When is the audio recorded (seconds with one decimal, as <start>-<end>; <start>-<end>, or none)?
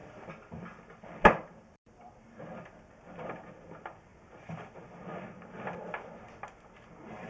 2.9-7.3